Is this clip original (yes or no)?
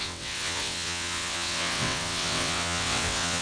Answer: no